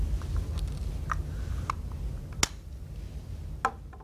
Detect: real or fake real